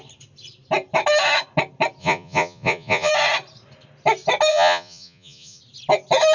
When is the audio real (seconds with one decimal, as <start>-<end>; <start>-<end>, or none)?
0.0-2.0; 3.1-4.5; 5.6-6.3